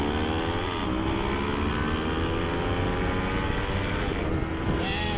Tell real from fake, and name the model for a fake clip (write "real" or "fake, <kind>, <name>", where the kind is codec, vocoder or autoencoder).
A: real